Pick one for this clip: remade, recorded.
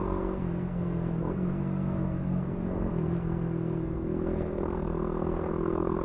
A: remade